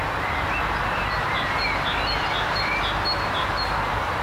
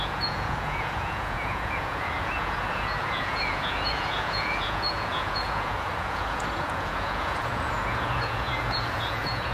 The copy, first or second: second